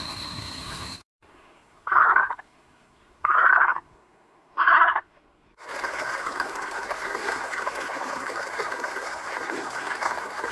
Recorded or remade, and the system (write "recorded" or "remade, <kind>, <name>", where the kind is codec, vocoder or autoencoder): remade, codec, SNAC